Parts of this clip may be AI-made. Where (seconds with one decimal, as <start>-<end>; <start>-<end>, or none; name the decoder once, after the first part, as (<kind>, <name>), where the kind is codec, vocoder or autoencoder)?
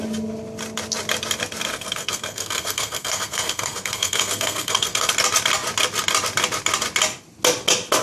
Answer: 1.7-5.1 (codec, SNAC)